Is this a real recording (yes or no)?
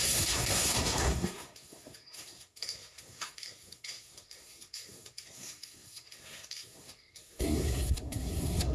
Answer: no